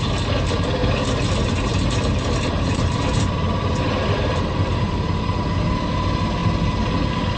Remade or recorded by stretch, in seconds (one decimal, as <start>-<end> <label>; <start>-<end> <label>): 0.0-0.8 recorded; 0.8-5.2 remade; 5.2-7.4 recorded